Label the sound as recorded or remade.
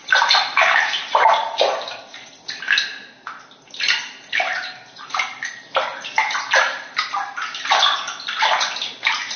recorded